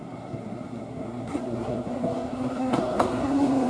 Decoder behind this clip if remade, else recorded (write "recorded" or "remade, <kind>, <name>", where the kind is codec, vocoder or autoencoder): remade, codec, SNAC